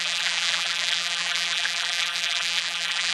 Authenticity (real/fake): fake